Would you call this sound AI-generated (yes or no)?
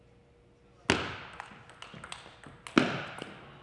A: no